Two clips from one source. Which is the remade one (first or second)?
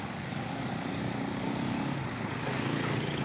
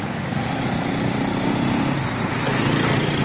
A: first